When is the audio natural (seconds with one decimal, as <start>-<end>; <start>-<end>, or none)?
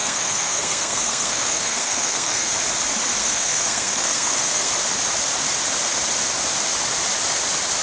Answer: 2.5-3.2; 4.7-7.8